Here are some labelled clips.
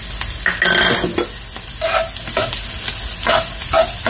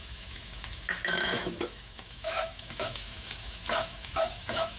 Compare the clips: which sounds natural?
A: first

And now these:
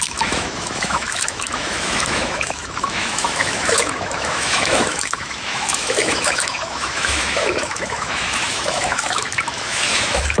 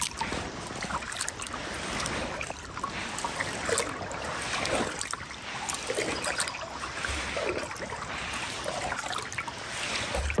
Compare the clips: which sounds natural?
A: second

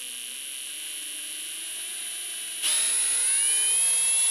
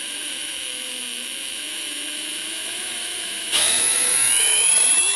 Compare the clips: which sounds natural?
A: first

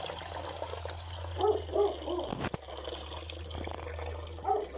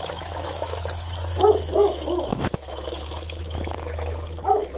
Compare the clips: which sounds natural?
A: first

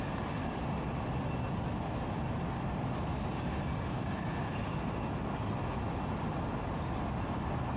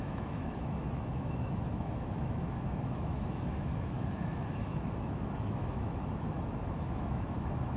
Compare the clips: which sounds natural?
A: first